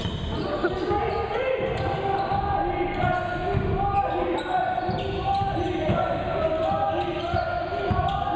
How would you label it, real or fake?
real